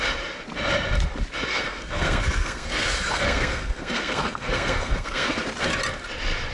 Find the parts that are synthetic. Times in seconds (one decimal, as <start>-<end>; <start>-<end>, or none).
1.5-5.4